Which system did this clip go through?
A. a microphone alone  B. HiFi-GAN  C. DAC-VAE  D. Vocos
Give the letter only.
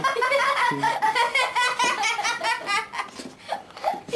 A